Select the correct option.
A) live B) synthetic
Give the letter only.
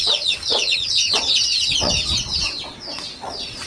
B